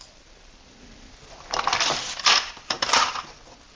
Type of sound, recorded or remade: remade